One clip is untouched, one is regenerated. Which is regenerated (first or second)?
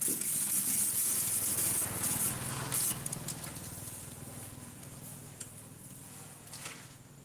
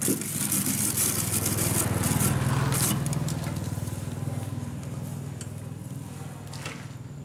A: first